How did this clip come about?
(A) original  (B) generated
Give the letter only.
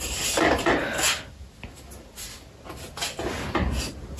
A